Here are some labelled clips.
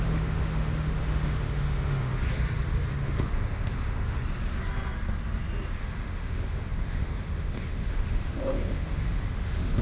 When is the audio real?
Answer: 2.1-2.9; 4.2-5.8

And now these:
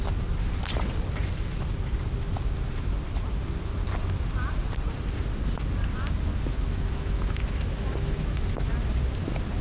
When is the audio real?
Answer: 0.0-6.3; 8.7-9.6

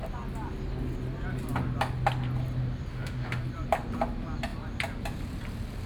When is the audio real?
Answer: 0.0-2.9; 3.4-5.9

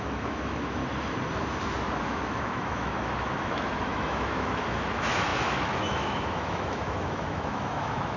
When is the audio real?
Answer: 0.8-2.0

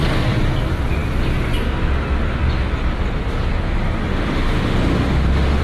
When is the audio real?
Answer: 0.0-4.1

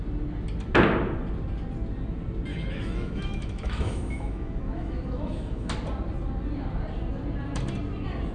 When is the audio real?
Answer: 0.0-2.5; 5.7-8.3

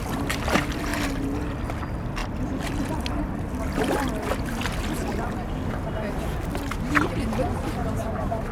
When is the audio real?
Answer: 0.0-8.5